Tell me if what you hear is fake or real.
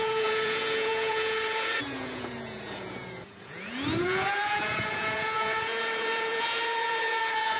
fake